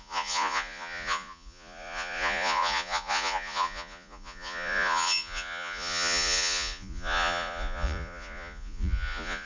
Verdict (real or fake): fake